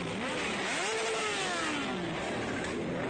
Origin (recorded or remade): recorded